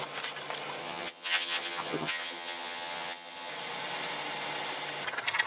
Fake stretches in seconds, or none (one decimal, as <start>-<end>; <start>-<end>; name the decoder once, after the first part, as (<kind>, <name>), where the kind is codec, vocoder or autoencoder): 0.8-3.5 (vocoder, HiFi-GAN)